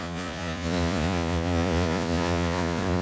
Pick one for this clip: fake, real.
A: fake